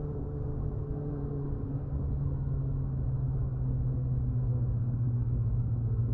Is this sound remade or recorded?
remade